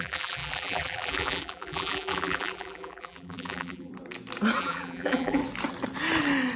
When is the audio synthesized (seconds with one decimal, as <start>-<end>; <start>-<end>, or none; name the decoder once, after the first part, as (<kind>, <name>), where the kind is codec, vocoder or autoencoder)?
0.0-3.9 (vocoder, BigVGAN v2); 4.6-5.4